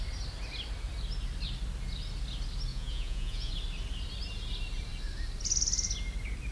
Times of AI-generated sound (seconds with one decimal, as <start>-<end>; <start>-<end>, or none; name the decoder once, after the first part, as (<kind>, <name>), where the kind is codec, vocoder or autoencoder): 2.7-3.5 (vocoder, Vocos)